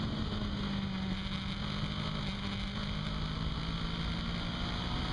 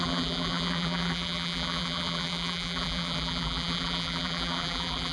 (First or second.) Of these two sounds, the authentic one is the first